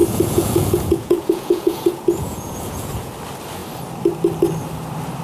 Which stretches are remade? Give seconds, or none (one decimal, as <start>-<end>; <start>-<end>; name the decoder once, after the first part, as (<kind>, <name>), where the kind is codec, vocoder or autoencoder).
0.0-3.1 (vocoder, Vocos)